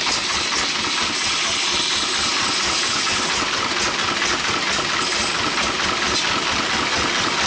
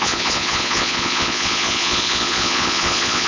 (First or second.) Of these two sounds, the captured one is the first